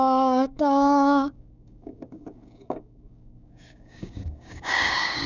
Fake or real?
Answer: fake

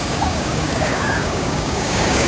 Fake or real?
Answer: fake